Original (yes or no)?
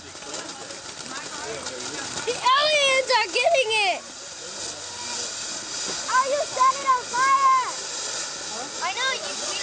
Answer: yes